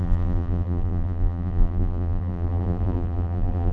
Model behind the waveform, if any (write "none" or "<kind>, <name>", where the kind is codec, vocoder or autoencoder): vocoder, BigVGAN v2